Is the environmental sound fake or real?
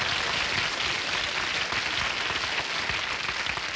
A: real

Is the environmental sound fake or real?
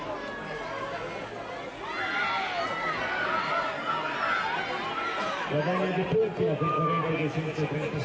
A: real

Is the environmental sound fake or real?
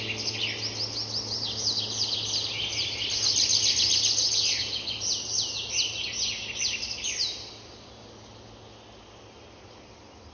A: real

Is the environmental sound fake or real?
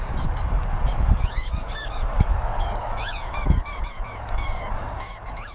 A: fake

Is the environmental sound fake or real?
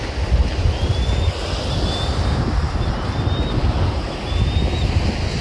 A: real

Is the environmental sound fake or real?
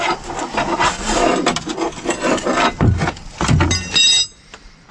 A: real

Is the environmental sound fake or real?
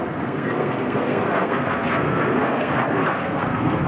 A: fake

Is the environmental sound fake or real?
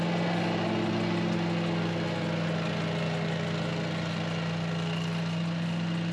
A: real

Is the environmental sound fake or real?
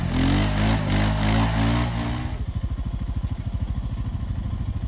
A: real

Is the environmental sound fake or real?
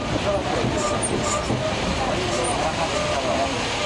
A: real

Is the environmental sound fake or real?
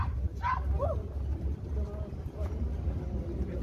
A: real